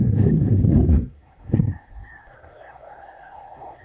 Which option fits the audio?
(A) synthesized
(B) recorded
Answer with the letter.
A